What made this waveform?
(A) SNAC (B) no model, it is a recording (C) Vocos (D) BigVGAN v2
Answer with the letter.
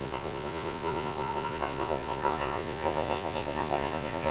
C